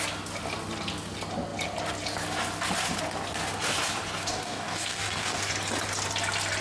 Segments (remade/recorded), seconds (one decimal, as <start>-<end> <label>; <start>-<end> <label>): 0.0-4.2 recorded; 4.2-5.5 remade; 5.5-6.6 recorded